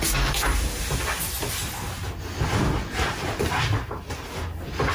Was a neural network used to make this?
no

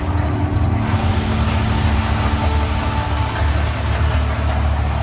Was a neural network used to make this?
no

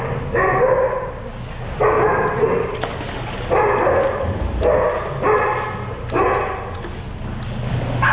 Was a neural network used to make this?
no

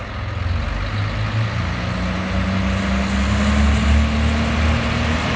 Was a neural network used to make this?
no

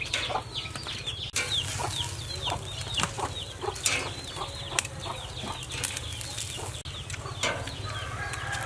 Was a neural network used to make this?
no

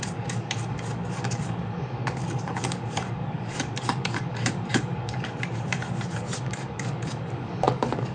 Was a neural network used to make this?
yes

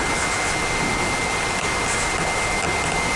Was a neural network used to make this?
no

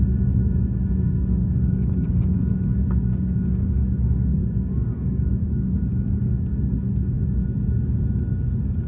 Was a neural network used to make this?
yes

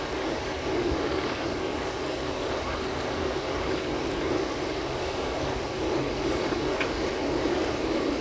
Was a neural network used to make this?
yes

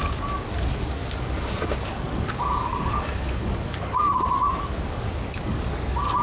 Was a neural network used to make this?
yes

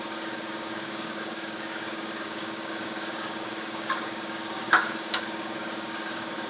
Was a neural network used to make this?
yes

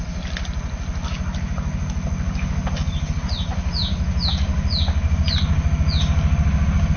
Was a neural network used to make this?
no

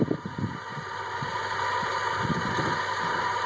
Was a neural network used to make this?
no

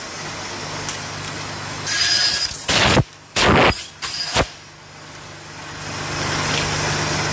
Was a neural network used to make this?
no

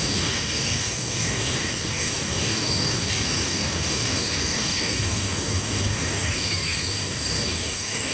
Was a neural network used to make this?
yes